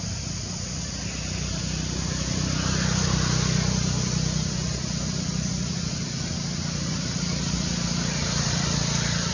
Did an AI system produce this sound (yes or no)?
no